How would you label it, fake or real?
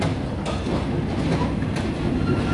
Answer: real